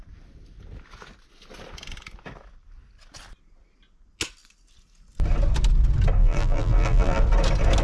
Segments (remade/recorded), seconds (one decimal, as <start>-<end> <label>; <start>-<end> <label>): 0.0-6.2 recorded; 6.2-7.2 remade; 7.2-7.8 recorded